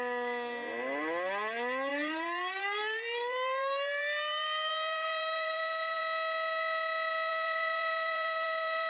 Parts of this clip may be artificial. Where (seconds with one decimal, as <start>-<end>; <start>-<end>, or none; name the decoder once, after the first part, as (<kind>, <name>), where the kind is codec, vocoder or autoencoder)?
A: 1.9-6.0 (vocoder, BigVGAN v2); 7.3-8.9